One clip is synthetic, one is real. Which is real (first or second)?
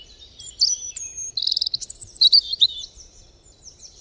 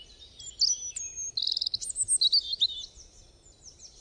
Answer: second